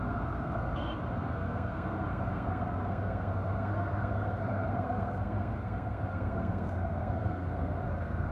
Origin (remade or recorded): remade